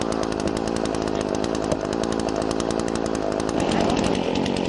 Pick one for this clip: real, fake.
real